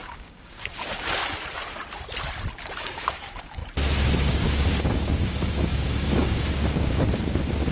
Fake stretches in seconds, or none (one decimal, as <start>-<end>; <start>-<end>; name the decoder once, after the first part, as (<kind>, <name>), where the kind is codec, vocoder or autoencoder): 0.0-1.2 (codec, DAC); 2.6-3.6; 4.3-7.7